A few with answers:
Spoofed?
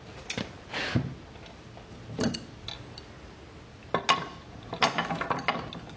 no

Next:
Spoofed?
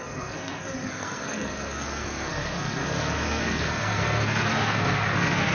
yes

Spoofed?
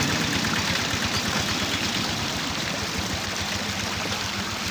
no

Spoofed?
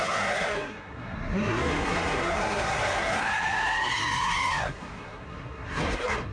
yes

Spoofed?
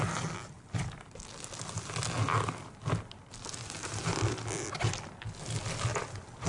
no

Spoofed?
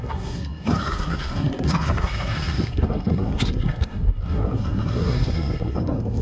yes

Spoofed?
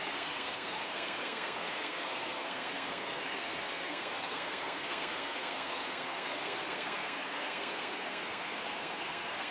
yes